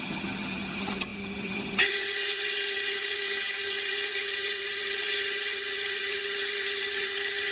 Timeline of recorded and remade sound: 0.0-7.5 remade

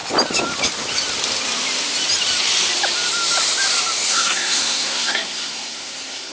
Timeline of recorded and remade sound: 0.0-4.1 recorded; 4.1-6.3 remade

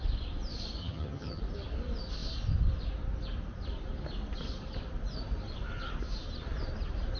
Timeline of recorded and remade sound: 0.0-0.8 recorded; 0.8-1.4 remade; 1.4-7.2 recorded